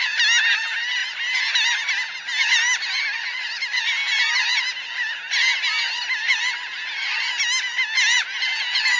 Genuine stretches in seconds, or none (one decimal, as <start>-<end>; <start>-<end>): 0.0-9.0